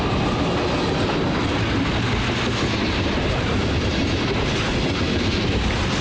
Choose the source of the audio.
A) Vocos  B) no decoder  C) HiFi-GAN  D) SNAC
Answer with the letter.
B